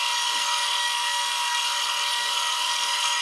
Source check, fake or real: fake